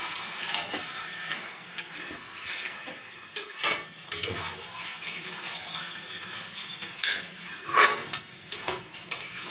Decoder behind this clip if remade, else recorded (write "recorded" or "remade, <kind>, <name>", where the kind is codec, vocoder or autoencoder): remade, codec, SNAC